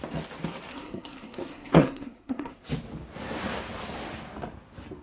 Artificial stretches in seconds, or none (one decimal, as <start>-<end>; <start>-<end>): 0.7-2.7